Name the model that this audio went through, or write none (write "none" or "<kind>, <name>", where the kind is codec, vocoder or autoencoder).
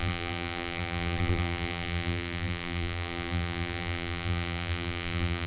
vocoder, BigVGAN v2